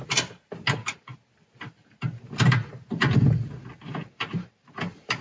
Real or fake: real